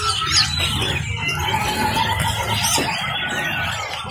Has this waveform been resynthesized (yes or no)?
no